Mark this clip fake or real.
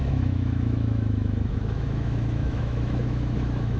fake